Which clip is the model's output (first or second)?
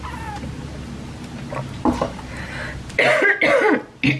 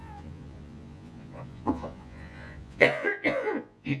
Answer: second